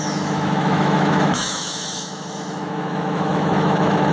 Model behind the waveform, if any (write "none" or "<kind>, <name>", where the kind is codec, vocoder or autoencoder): autoencoder, DAC-VAE